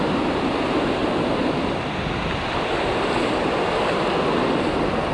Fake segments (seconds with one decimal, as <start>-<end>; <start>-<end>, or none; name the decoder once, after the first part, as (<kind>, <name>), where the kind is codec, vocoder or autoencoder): 1.0-1.6 (vocoder, BigVGAN v2)